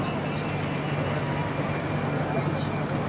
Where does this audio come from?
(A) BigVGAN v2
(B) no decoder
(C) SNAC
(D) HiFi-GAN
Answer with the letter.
B